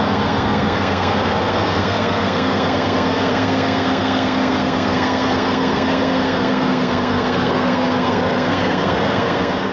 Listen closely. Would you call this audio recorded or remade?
remade